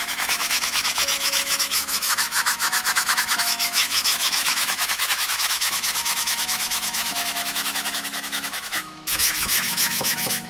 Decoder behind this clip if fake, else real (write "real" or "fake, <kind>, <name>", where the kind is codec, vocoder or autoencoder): fake, autoencoder, DAC-VAE